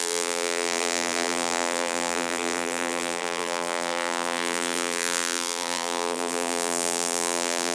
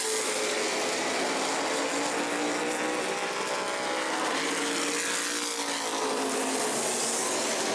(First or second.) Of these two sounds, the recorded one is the second